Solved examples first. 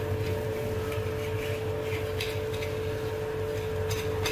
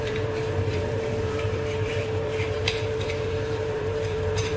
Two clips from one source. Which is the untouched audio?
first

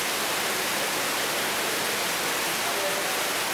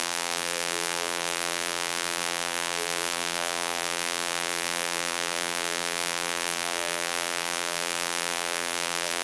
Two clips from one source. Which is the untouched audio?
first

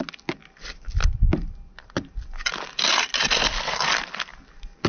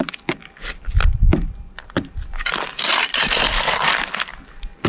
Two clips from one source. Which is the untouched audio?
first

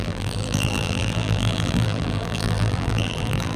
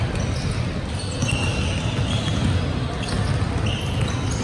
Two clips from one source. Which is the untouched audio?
second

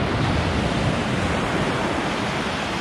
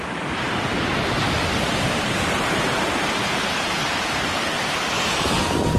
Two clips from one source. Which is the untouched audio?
first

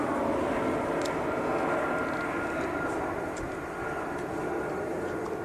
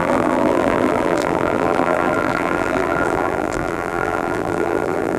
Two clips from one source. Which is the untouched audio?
first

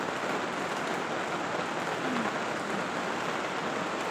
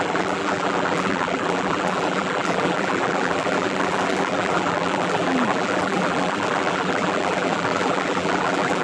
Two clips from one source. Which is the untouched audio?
first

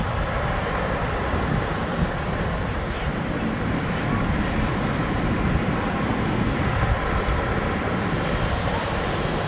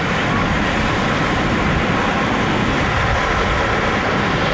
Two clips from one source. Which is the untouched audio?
second